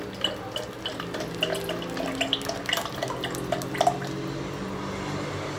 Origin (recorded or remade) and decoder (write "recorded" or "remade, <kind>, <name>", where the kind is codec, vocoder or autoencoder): recorded